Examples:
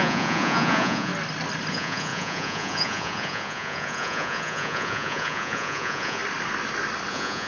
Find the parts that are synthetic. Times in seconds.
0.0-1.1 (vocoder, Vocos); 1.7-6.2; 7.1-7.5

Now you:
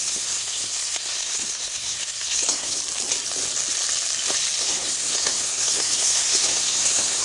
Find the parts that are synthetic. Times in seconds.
0.0-2.8 (codec, SNAC); 4.6-7.2

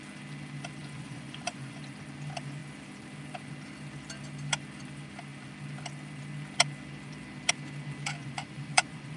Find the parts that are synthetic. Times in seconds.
0.8-1.8 (vocoder, Vocos); 8.2-9.2

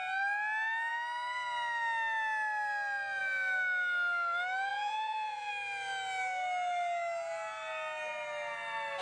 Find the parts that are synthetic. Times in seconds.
4.7-5.5 (vocoder, Vocos)

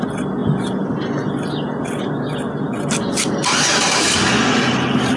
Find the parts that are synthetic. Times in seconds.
none